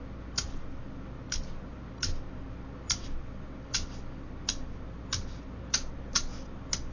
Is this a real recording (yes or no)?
yes